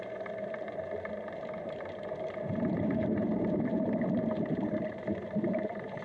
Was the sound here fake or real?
fake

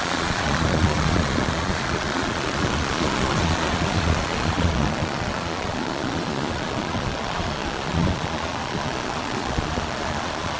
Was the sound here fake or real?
fake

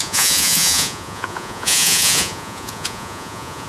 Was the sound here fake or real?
fake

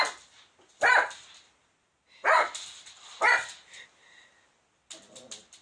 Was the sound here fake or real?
real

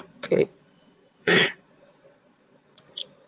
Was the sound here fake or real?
fake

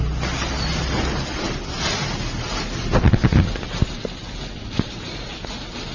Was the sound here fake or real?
real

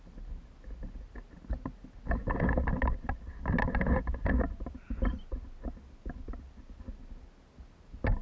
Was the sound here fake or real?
real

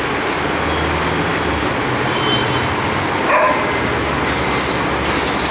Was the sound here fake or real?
real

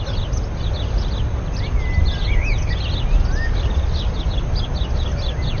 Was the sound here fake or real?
real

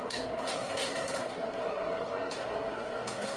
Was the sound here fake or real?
fake